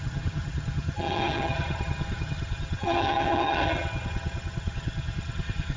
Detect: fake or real fake